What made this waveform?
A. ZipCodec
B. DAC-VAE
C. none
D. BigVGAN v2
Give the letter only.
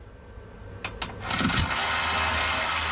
C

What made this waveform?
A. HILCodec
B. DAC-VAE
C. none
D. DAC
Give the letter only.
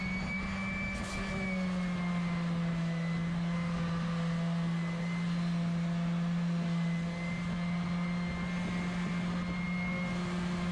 C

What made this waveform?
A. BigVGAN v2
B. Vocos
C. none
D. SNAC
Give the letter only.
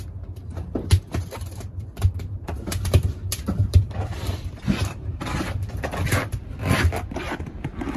A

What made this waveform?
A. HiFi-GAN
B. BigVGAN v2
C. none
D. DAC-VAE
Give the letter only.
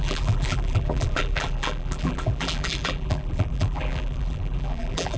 B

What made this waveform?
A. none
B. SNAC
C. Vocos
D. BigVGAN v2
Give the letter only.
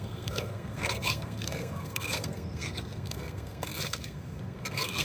B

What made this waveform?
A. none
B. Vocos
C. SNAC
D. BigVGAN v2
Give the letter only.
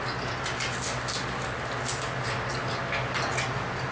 A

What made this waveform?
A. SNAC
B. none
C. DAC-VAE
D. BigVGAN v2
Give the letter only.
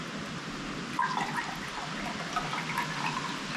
B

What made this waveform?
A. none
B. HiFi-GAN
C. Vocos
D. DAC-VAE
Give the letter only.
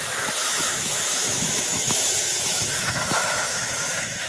D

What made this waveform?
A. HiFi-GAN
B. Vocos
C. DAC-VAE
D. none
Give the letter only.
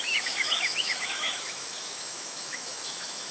C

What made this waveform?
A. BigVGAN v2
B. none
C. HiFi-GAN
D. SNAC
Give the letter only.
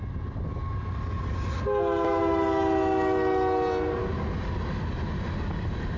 B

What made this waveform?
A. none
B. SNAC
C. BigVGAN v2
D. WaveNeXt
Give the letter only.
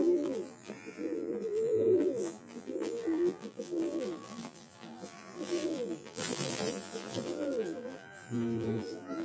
C